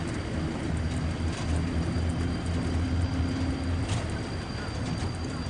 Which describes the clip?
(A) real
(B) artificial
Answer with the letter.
A